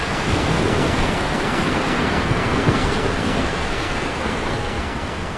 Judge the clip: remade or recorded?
remade